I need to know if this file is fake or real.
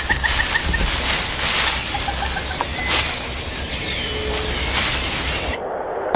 real